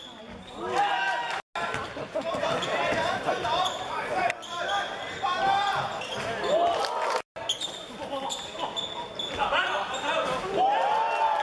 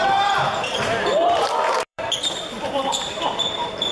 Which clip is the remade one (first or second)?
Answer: second